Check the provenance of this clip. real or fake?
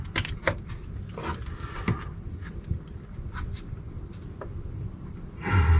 real